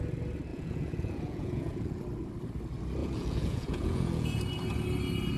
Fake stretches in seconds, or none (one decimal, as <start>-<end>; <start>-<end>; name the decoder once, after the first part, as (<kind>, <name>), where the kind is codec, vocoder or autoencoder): 0.5-2.0 (vocoder, Vocos); 3.0-4.4